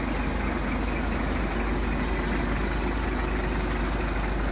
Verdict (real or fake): real